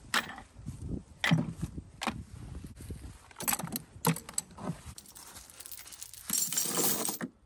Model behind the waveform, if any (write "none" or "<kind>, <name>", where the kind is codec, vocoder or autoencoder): none